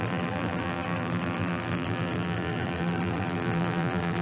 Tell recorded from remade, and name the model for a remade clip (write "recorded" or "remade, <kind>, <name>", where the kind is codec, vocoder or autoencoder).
remade, vocoder, BigVGAN v2